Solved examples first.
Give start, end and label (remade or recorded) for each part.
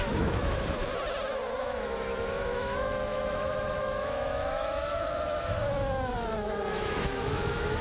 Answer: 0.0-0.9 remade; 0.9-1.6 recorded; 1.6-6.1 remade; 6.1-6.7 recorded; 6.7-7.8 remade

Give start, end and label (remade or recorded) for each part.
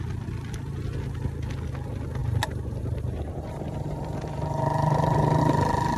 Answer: 0.0-2.2 recorded; 2.2-5.4 remade; 5.4-6.0 recorded